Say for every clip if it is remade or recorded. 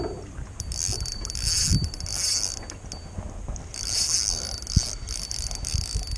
recorded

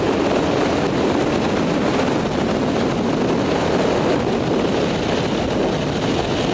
recorded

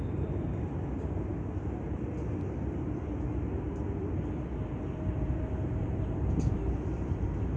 recorded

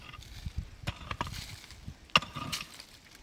recorded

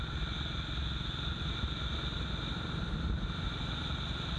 recorded